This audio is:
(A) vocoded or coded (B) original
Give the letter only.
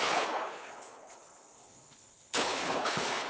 A